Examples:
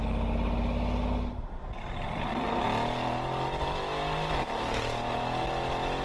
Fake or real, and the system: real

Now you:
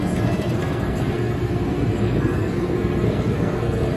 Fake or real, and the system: fake, codec, SNAC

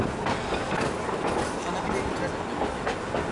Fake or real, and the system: real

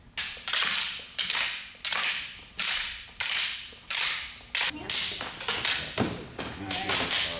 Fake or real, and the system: real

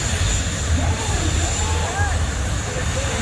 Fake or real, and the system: fake, vocoder, BigVGAN v2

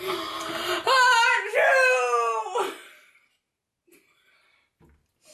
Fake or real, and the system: real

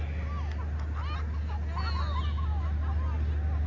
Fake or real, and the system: real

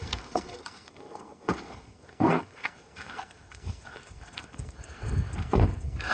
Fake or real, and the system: fake, codec, SNAC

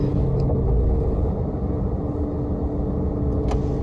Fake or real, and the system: real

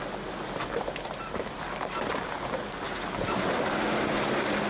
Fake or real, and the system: real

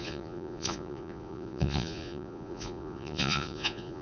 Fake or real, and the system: fake, vocoder, Vocos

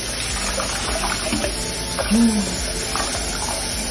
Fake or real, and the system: real